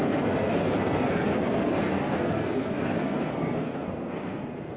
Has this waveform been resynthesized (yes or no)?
yes